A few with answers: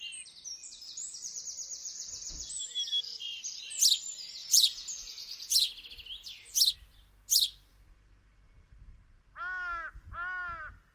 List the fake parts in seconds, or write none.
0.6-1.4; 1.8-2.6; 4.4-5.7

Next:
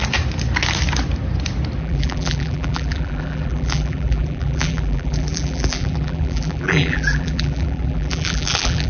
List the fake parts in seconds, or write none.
1.8-8.9